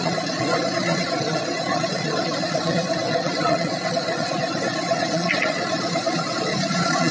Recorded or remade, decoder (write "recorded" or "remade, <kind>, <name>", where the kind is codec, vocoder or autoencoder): remade, vocoder, Vocos